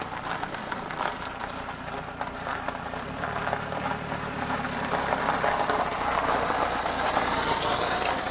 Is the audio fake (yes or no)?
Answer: yes